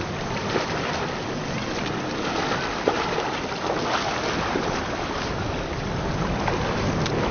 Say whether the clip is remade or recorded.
recorded